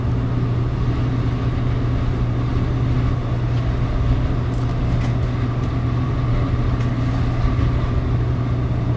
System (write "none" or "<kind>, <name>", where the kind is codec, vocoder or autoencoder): none